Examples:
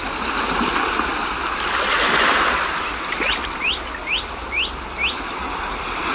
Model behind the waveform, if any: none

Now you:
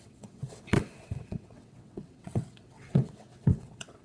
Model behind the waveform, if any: vocoder, WaveNeXt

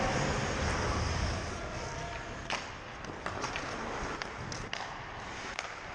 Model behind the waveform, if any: none